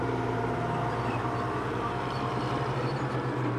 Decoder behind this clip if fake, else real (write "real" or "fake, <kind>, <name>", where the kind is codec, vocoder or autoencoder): fake, vocoder, BigVGAN v2